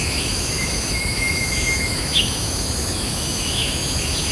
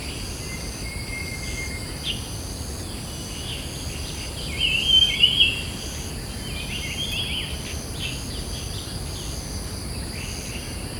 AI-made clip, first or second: first